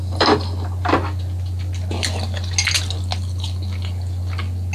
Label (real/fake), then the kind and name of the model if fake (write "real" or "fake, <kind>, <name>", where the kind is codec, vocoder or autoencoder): real